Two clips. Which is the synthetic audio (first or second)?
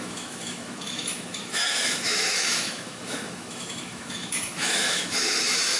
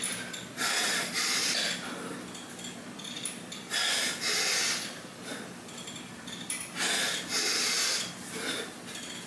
first